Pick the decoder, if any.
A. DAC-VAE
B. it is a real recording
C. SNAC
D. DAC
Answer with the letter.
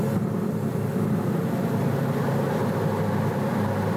B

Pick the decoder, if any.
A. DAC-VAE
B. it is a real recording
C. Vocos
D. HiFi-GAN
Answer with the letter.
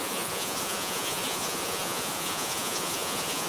C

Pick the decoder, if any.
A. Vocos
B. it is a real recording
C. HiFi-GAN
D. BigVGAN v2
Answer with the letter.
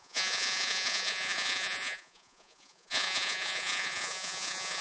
A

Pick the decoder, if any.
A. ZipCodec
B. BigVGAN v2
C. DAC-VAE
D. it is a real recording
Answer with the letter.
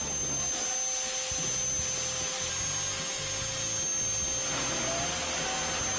D